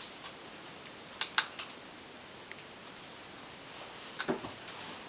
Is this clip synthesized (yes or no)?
no